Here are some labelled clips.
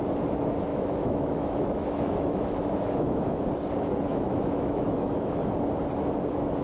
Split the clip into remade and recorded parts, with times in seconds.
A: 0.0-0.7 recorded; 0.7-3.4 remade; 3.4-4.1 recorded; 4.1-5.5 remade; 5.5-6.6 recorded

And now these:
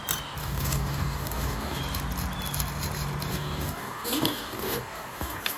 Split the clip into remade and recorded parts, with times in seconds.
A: 0.0-0.4 recorded; 0.4-1.8 remade; 1.8-3.3 recorded; 3.3-5.6 remade

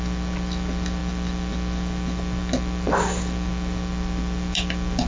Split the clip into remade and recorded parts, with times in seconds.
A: 0.0-5.1 recorded

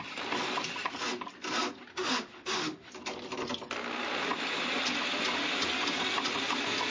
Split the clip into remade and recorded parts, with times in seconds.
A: 0.0-1.9 recorded; 1.9-2.9 remade; 2.9-6.9 recorded

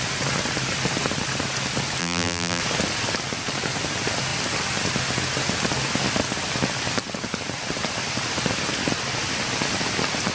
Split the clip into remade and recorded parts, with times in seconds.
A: 0.0-2.0 recorded; 2.0-2.6 remade; 2.6-10.3 recorded

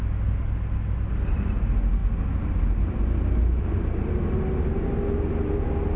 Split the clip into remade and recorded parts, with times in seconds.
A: 0.0-6.0 recorded